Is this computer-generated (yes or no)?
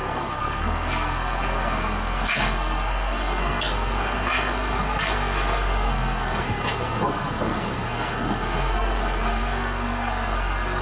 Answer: yes